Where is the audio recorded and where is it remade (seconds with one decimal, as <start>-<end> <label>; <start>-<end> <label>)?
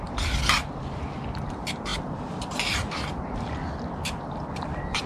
0.0-5.1 remade